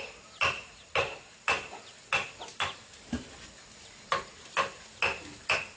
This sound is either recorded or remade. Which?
recorded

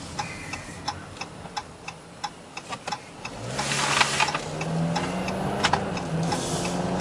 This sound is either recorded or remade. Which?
recorded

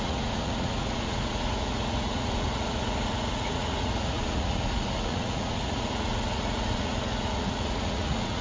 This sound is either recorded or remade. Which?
remade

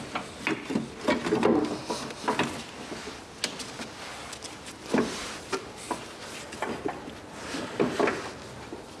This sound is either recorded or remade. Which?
recorded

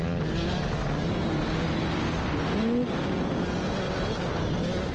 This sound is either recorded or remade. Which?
recorded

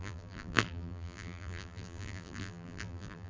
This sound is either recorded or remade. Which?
remade